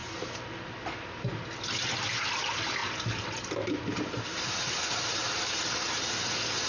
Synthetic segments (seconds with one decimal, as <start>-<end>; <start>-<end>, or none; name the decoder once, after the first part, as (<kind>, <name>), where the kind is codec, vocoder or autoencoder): none